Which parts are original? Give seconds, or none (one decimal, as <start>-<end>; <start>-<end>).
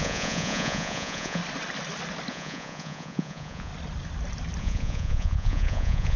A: 1.4-2.3; 3.7-4.6